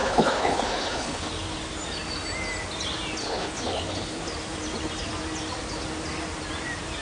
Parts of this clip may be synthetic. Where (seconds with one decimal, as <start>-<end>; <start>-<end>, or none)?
0.0-1.3; 3.2-4.2